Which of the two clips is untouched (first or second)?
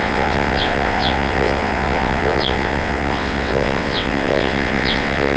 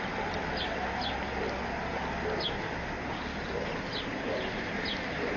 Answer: second